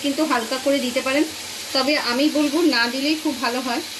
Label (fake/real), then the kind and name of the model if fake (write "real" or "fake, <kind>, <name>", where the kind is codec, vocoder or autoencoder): real